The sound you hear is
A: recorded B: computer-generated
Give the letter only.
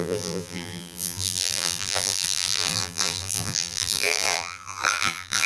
B